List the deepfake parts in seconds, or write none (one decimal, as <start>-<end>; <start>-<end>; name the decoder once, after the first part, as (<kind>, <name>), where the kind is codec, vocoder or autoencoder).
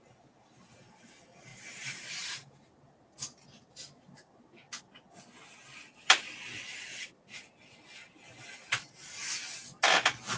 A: 1.5-2.5 (vocoder, BigVGAN v2)